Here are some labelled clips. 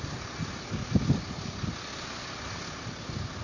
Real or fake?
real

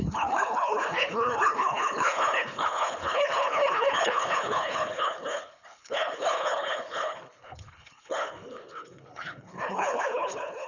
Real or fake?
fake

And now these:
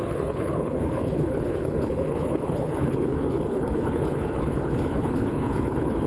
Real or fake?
fake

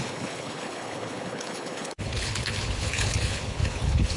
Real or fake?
fake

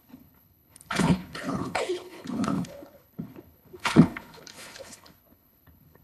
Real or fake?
fake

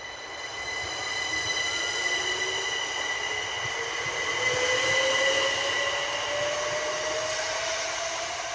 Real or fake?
real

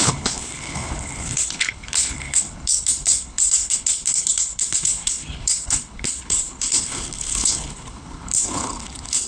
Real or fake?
fake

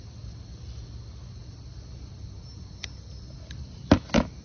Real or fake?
real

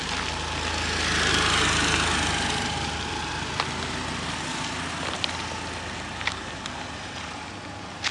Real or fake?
real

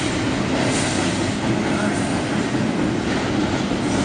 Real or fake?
real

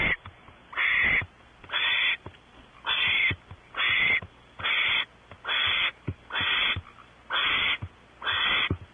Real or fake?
real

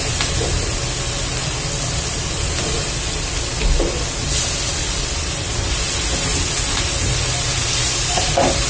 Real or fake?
real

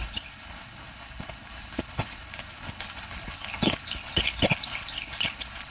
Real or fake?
fake